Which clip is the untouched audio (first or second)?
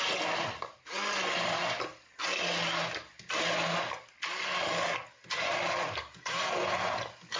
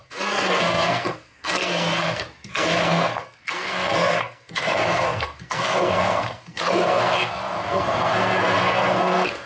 first